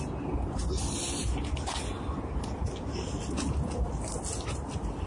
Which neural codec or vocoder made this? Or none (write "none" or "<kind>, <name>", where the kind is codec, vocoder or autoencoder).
none